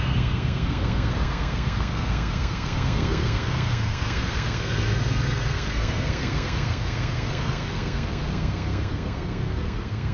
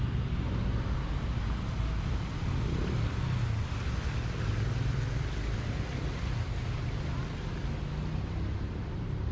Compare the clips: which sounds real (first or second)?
second